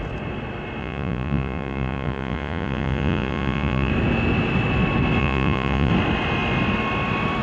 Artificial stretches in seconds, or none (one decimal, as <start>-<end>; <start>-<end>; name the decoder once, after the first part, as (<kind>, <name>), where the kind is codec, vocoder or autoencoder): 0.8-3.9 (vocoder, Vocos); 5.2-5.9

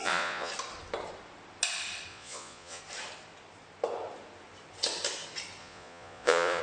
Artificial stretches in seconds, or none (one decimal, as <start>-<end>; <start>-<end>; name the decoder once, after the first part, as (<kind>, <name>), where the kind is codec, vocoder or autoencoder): 0.0-0.5 (vocoder, Vocos); 2.1-2.8; 5.6-6.6

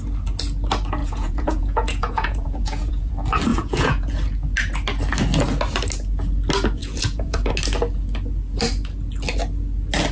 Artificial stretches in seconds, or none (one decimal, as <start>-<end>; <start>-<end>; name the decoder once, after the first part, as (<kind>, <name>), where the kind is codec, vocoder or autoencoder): 1.0-3.1 (vocoder, Vocos); 3.5-4.1; 6.8-7.5

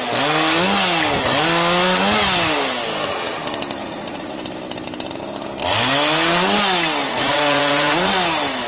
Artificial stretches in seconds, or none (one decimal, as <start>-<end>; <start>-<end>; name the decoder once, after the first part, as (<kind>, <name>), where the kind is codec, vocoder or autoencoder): 3.8-4.4 (vocoder, Vocos); 7.1-8.1

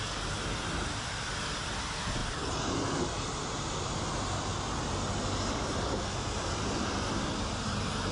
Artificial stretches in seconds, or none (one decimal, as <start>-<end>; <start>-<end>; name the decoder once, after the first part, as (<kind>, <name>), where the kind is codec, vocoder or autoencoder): none